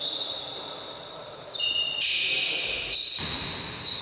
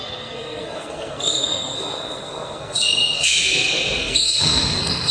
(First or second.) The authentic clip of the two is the first